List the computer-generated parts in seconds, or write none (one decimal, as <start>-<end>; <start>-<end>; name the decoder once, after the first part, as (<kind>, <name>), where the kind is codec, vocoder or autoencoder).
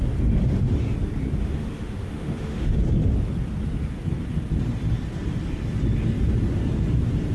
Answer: 1.4-2.7 (autoencoder, DAC-VAE)